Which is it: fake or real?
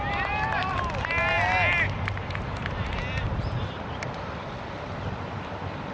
real